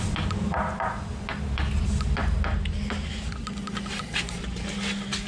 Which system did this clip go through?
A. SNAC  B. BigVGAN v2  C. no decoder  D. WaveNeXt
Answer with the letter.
C